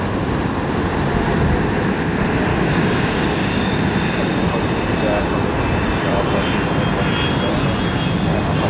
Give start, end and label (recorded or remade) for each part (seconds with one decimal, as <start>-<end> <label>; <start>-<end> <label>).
0.0-2.5 recorded; 2.5-3.7 remade; 3.7-8.7 recorded